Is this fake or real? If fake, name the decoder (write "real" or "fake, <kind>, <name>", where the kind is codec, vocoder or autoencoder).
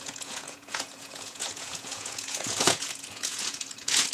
fake, vocoder, Vocos